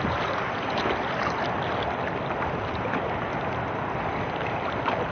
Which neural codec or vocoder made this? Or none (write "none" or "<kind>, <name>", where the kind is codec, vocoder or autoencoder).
none